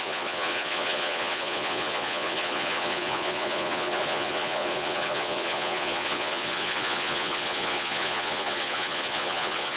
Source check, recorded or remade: remade